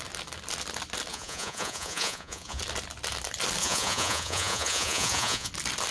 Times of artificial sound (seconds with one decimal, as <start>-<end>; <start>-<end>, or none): 1.1-2.6; 3.6-5.5